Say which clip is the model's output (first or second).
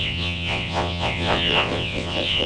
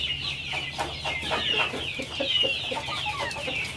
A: first